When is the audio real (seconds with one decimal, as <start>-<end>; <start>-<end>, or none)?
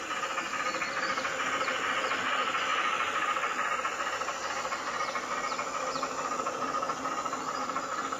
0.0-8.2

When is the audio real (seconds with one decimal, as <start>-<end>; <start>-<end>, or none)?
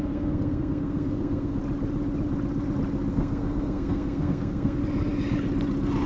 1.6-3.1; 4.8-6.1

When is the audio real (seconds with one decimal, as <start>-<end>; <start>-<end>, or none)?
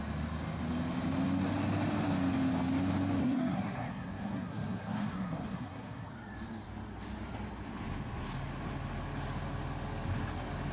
0.0-3.2; 6.1-10.7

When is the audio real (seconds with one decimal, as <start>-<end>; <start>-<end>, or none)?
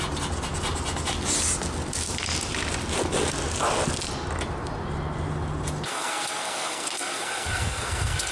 0.0-5.9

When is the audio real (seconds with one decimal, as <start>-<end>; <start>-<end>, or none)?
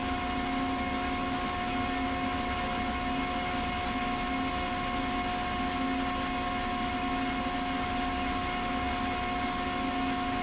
0.0-10.4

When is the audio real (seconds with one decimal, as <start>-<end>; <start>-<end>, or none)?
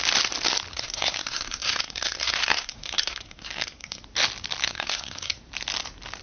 0.0-0.7; 4.0-4.6; 5.4-6.2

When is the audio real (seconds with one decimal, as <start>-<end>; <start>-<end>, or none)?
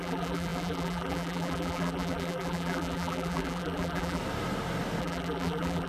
4.2-5.0